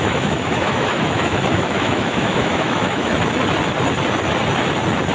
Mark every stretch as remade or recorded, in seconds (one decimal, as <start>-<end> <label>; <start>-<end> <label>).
0.0-3.1 remade; 3.1-5.1 recorded